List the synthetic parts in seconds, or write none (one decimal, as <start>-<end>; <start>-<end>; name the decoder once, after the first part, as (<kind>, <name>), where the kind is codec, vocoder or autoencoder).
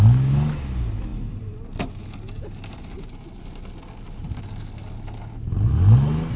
none